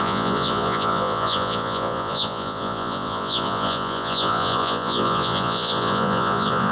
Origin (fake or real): fake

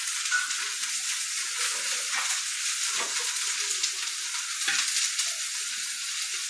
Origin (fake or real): real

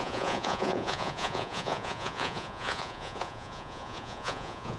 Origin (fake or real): fake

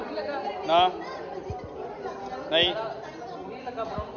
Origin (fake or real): real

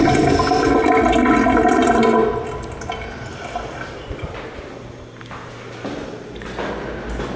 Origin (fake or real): real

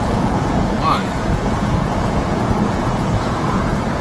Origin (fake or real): fake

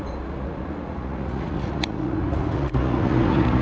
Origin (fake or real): fake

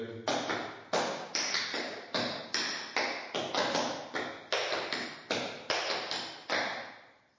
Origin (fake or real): real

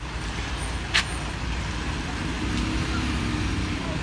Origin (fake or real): real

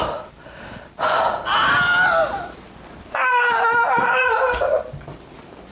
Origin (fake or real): real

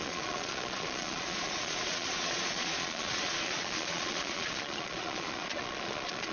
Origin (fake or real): fake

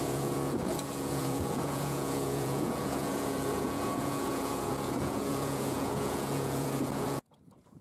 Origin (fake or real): fake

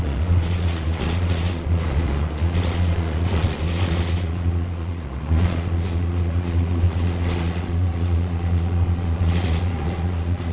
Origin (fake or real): fake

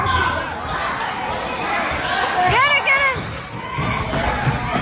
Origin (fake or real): real